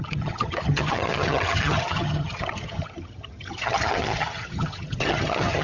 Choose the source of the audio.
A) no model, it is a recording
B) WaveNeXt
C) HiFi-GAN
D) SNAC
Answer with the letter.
C